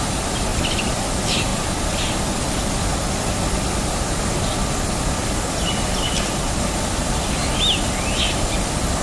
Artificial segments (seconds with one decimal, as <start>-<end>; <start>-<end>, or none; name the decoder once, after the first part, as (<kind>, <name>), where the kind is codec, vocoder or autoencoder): 0.5-1.0 (vocoder, BigVGAN v2); 1.5-2.2